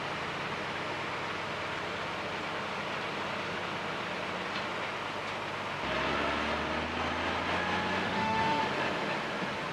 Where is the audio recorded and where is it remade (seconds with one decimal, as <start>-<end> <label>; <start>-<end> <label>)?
0.0-8.0 recorded; 8.0-8.6 remade; 8.6-9.7 recorded